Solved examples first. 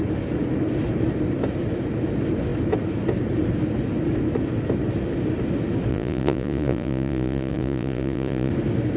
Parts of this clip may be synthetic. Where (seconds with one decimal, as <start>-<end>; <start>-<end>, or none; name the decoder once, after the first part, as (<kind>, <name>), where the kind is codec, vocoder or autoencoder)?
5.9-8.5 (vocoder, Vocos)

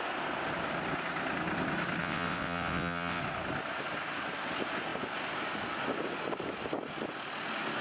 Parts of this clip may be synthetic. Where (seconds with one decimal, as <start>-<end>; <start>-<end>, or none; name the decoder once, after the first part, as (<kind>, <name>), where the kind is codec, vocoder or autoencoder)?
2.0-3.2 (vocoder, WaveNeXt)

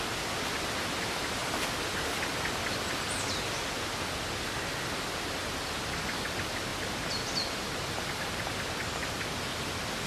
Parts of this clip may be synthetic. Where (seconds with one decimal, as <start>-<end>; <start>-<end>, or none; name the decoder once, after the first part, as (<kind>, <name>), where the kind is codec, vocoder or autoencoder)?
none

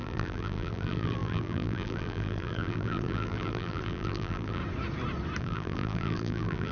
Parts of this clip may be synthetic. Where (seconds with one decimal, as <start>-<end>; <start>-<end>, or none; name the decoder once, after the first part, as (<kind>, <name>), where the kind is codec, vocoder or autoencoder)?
0.0-4.6 (vocoder, BigVGAN v2); 5.4-6.7